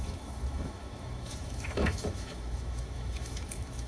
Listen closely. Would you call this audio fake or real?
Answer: fake